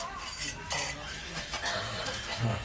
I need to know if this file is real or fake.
real